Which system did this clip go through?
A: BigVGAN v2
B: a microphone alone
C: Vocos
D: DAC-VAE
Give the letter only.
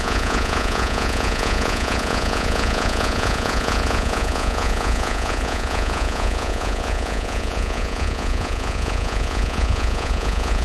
C